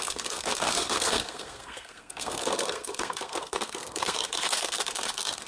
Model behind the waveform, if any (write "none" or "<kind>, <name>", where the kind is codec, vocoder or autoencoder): codec, SNAC